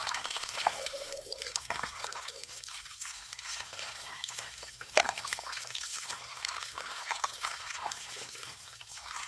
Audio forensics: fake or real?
fake